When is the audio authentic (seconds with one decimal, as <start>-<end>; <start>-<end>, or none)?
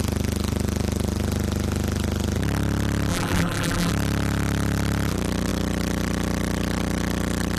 0.0-3.1; 3.9-7.6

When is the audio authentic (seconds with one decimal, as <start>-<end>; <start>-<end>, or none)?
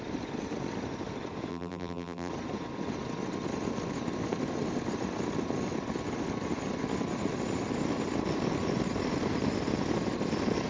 0.0-1.5; 2.3-10.7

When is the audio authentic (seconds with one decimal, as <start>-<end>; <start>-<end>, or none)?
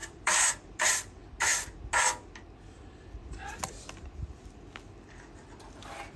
0.5-6.2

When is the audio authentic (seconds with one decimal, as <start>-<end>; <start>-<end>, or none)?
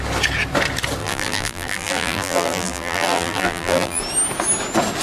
0.0-1.0; 4.0-5.0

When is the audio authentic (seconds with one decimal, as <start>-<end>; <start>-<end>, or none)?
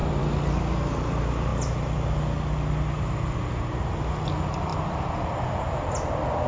0.6-6.5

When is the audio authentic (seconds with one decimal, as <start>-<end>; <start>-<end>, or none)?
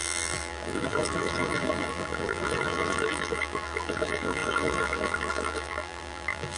none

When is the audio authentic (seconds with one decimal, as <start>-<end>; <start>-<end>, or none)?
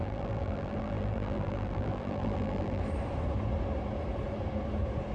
2.8-5.1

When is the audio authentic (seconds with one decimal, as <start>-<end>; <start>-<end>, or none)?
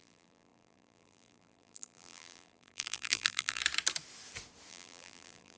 3.6-4.7